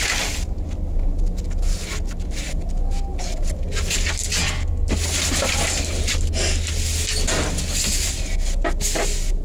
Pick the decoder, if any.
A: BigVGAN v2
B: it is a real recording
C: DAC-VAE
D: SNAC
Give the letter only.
B